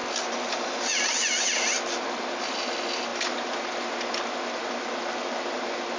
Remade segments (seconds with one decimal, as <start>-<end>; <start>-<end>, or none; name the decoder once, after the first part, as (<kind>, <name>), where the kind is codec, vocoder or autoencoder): none